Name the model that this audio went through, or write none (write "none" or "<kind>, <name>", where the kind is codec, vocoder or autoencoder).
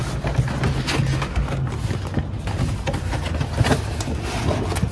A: none